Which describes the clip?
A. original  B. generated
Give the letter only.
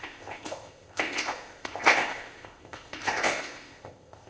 B